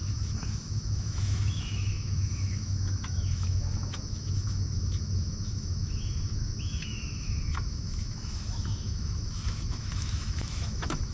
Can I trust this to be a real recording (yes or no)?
no